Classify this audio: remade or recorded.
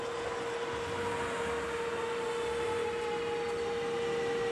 recorded